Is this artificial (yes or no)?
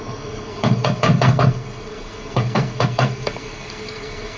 yes